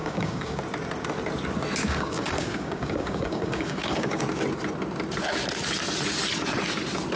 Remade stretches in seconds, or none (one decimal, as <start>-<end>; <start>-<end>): 0.0-0.6; 1.8-4.2